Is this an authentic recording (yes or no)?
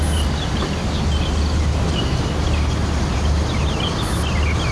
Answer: yes